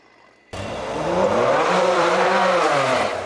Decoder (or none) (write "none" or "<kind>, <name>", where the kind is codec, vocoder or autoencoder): vocoder, BigVGAN v2